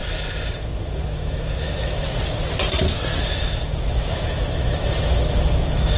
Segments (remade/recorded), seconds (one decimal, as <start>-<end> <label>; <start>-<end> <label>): 0.0-0.6 recorded; 0.6-2.1 remade; 2.1-3.2 recorded; 3.2-6.0 remade